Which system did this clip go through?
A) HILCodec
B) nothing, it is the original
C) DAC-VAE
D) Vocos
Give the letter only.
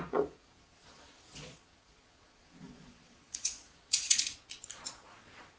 D